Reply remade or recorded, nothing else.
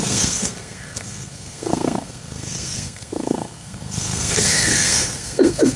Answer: remade